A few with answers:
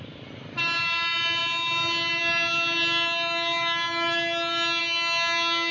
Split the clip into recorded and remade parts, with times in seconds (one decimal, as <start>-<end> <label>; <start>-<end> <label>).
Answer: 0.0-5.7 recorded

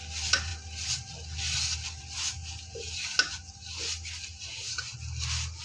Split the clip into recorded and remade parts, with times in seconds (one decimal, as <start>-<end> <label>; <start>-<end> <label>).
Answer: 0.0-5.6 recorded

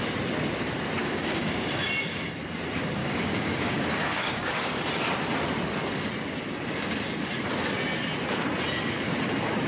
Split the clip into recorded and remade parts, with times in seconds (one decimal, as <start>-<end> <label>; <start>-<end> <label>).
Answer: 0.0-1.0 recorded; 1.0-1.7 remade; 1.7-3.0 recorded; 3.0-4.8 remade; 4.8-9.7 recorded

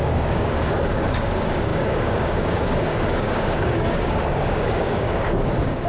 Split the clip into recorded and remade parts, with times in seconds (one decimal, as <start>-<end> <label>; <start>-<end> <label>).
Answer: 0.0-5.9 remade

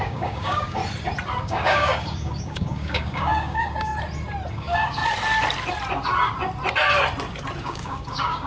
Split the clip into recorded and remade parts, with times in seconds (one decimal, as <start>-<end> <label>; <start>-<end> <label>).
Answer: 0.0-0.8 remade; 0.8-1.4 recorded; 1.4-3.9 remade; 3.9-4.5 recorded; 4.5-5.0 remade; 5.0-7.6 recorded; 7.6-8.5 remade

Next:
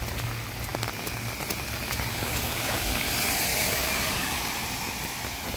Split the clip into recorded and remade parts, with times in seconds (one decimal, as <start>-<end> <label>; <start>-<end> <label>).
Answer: 0.0-2.1 recorded; 2.1-3.1 remade; 3.1-3.5 recorded; 3.5-4.5 remade; 4.5-5.6 recorded

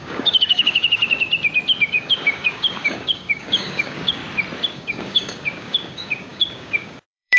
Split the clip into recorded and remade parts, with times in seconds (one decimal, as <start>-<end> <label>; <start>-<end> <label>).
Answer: 0.0-1.3 remade; 1.3-1.9 recorded; 1.9-4.2 remade; 4.2-4.7 recorded; 4.7-7.4 remade

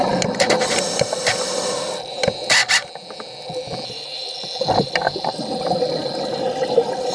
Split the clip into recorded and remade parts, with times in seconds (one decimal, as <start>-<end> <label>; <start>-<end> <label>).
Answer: 0.0-7.1 recorded